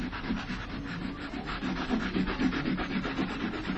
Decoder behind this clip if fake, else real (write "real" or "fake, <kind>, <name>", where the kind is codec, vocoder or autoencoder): real